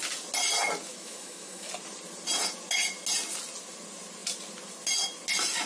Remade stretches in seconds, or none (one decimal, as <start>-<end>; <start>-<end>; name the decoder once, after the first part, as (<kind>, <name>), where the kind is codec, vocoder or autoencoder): 0.9-1.7 (autoencoder, DAC-VAE)